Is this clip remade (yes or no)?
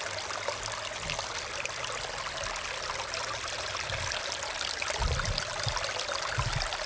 no